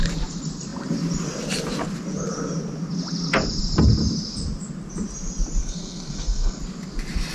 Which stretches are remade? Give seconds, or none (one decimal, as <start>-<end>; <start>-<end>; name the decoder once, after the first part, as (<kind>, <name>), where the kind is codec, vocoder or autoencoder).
5.6-6.6 (codec, SNAC)